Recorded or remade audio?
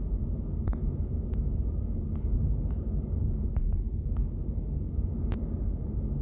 recorded